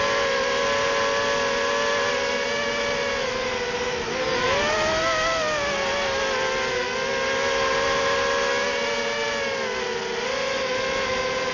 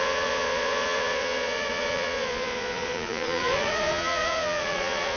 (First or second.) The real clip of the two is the first